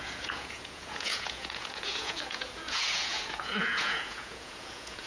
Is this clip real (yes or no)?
no